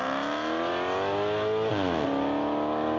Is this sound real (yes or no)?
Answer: yes